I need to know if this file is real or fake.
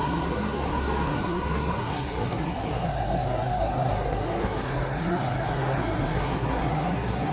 fake